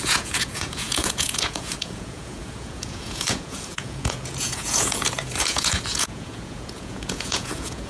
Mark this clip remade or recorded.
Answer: remade